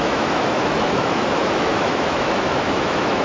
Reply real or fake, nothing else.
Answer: fake